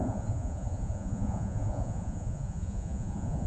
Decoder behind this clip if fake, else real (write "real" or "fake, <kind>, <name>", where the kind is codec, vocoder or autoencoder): fake, vocoder, Vocos